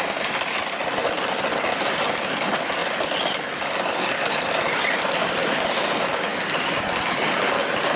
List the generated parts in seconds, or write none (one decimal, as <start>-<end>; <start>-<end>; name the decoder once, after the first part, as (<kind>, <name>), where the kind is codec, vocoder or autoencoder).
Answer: none